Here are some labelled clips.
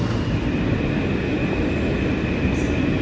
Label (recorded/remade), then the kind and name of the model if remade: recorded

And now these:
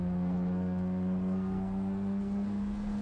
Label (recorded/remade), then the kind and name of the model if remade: remade, codec, SNAC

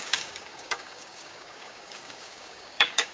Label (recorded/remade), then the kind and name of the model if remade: remade, codec, DAC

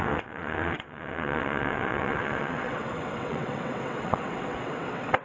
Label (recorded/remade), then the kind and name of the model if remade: remade, vocoder, WaveNeXt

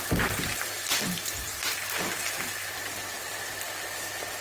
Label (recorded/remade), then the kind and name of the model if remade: recorded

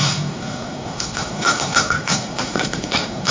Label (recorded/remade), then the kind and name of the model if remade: remade, codec, SNAC